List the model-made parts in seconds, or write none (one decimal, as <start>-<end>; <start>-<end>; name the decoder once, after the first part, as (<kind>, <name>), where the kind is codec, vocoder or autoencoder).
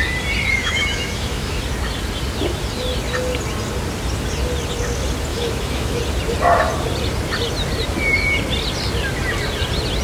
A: 0.6-1.6 (autoencoder, DAC-VAE); 5.3-6.0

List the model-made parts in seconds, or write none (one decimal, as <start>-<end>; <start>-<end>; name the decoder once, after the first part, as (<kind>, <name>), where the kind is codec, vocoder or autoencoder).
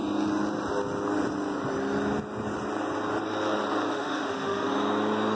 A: 3.9-4.7 (autoencoder, DAC-VAE)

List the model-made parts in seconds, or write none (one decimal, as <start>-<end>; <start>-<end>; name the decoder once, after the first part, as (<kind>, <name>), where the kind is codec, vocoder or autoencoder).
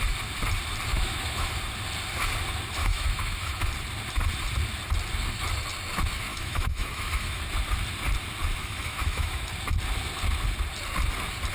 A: 0.9-1.5 (autoencoder, DAC-VAE); 2.8-3.7; 6.3-7.4; 8.6-9.5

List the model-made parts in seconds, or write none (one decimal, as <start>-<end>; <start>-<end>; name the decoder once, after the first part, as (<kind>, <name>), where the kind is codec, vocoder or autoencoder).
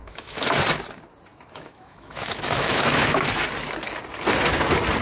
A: 0.0-0.6 (autoencoder, DAC-VAE); 1.3-3.3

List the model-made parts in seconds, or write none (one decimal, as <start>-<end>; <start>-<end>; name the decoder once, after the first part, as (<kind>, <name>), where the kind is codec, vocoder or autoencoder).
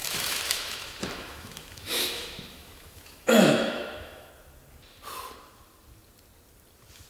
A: 0.0-4.3 (autoencoder, DAC-VAE)